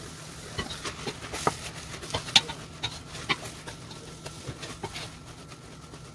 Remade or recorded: recorded